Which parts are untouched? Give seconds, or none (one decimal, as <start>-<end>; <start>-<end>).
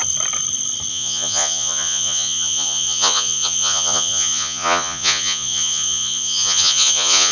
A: 0.0-0.9